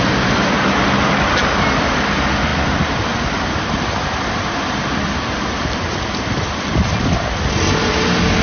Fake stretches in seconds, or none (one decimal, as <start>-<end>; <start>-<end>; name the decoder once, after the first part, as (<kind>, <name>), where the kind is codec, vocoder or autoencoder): 2.5-7.3 (vocoder, BigVGAN v2)